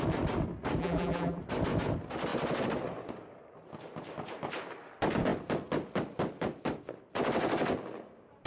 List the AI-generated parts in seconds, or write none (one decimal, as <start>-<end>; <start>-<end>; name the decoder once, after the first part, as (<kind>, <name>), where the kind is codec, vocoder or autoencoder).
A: 0.8-1.4 (vocoder, BigVGAN v2)